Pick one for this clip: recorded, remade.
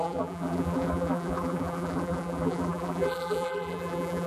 remade